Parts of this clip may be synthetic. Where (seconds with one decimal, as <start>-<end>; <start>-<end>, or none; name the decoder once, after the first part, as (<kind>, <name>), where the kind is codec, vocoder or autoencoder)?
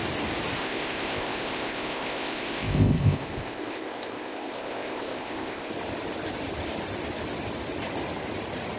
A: 0.6-5.7 (codec, ZipCodec)